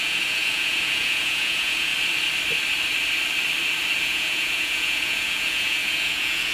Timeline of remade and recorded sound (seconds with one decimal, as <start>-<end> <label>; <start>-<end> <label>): 0.0-1.9 remade; 1.9-4.0 recorded; 4.0-6.5 remade